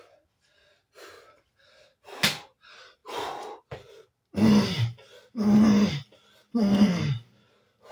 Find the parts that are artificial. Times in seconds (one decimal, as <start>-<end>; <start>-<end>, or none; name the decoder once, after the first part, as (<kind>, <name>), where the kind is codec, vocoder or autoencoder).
6.5-7.0 (codec, SNAC)